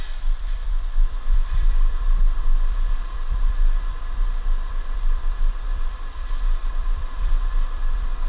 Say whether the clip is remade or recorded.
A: remade